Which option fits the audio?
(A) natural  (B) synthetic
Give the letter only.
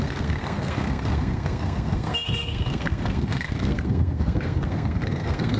B